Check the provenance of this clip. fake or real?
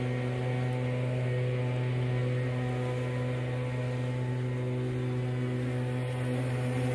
real